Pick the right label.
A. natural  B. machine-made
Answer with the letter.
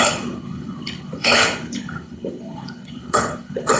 B